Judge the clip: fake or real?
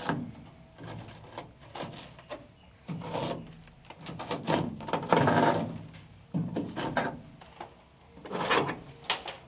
real